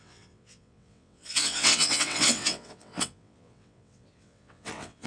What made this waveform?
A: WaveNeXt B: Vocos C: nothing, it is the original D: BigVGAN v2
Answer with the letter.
A